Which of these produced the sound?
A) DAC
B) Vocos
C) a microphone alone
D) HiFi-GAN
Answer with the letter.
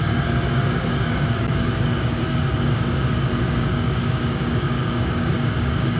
A